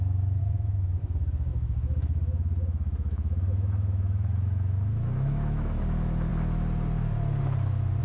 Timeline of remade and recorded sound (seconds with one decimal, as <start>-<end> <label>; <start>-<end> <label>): 0.0-0.4 recorded; 0.4-1.0 remade; 1.0-1.5 recorded; 1.5-5.8 remade; 5.8-8.0 recorded